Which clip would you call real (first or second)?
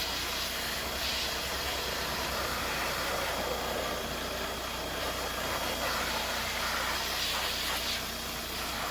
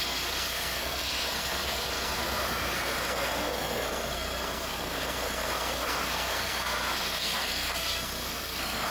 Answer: first